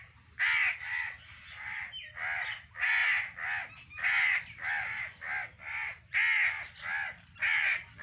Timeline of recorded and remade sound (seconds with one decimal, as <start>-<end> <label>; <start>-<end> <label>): 0.0-8.0 recorded